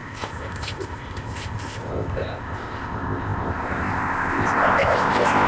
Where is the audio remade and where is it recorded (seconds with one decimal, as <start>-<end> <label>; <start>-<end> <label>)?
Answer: 0.0-5.5 remade